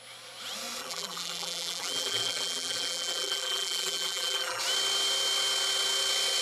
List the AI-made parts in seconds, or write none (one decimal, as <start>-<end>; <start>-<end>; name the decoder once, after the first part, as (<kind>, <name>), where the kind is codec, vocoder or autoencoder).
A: 0.8-4.6 (vocoder, BigVGAN v2)